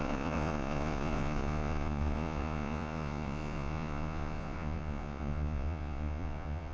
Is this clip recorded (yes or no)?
no